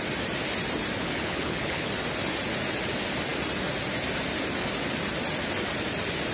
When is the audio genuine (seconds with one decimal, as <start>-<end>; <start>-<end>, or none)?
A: 0.0-1.0; 1.9-6.3